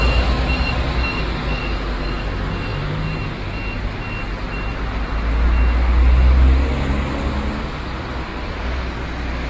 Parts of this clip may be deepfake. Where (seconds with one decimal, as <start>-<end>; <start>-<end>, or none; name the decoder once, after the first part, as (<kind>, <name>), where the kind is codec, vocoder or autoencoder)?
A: 8.3-9.1 (vocoder, BigVGAN v2)